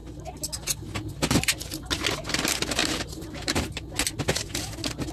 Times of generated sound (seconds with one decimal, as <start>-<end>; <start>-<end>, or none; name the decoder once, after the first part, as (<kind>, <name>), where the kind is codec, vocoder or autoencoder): 2.8-3.8 (vocoder, BigVGAN v2)